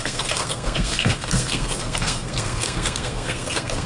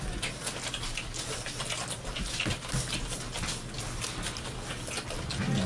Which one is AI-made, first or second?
first